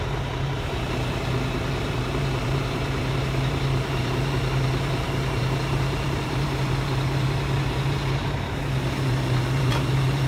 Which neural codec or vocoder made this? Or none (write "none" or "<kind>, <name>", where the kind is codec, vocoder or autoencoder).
vocoder, BigVGAN v2